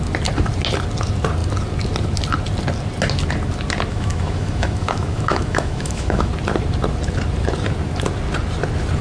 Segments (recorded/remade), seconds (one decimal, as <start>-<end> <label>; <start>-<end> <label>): 0.0-3.9 recorded; 3.9-6.3 remade; 6.3-9.0 recorded